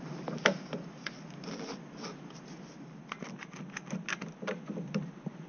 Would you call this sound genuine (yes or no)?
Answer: yes